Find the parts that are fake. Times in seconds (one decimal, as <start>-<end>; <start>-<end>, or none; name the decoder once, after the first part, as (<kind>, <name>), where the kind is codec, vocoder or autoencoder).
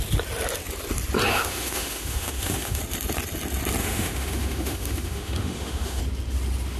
1.3-2.8 (autoencoder, DAC-VAE); 3.8-6.0